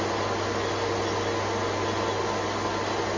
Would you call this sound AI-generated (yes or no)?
no